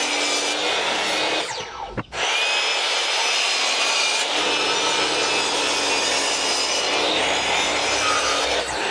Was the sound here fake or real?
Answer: real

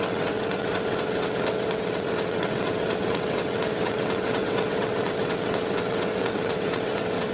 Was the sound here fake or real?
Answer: fake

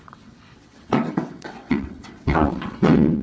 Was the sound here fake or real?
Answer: fake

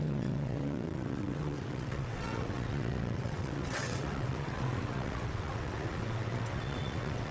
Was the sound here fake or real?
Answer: fake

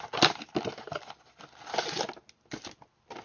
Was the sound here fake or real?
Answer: real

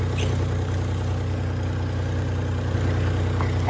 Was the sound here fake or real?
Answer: real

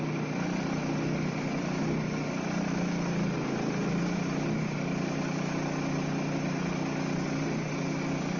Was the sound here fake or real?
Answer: real